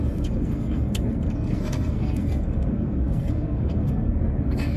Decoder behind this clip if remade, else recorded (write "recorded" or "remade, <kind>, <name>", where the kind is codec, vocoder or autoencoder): remade, codec, SNAC